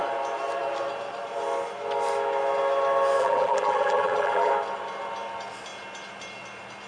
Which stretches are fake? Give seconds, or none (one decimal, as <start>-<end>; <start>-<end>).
3.2-4.5